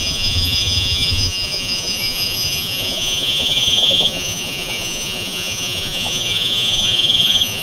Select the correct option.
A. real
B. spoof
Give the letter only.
B